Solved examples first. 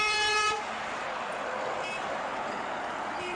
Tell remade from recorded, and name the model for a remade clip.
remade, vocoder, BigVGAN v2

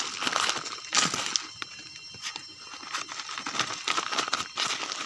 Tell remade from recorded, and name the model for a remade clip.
recorded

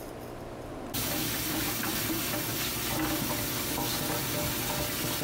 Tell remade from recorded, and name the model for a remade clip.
recorded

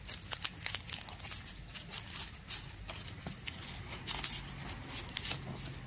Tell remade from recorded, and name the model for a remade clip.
recorded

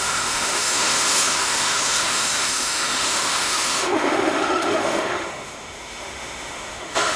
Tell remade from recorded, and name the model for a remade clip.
remade, autoencoder, DAC-VAE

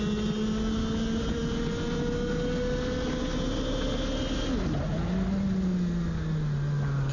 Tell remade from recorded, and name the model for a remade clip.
recorded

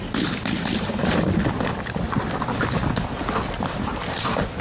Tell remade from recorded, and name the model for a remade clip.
remade, vocoder, BigVGAN v2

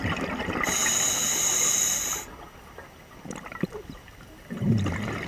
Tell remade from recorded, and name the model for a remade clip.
recorded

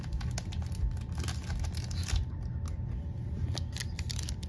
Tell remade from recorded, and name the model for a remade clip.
recorded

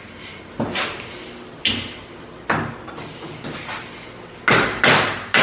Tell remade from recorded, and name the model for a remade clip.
recorded